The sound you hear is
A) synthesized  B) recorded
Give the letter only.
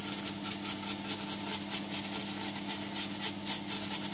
B